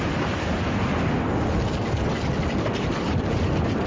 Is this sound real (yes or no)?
yes